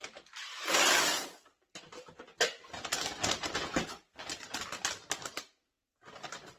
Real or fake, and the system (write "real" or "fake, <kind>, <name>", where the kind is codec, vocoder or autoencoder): real